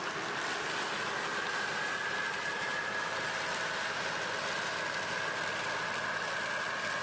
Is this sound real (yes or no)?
yes